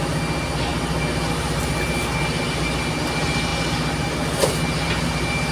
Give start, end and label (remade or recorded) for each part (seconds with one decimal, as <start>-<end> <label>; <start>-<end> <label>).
0.0-5.5 recorded